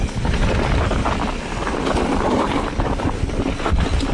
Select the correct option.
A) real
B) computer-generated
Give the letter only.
A